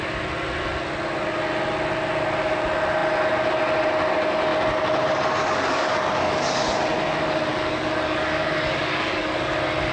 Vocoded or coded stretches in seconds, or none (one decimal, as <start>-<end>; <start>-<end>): 5.4-6.8; 7.5-9.5